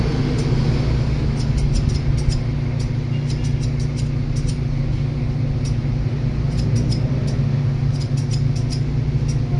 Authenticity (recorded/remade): recorded